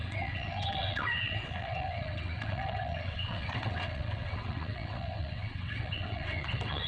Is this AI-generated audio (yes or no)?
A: yes